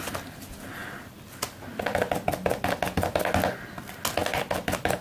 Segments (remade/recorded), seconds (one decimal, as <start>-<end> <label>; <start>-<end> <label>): 0.0-5.0 recorded